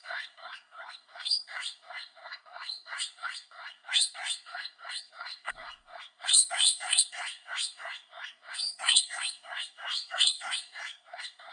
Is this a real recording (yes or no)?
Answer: no